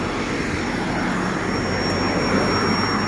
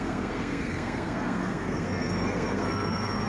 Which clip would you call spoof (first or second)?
second